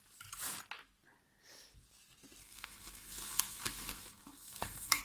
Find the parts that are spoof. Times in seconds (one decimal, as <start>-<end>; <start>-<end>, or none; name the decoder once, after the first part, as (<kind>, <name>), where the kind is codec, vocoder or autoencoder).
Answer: 2.4-5.0 (codec, SNAC)